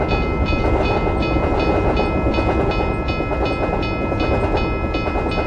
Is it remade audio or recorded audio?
recorded